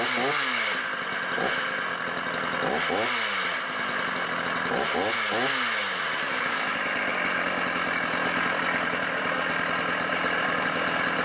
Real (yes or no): yes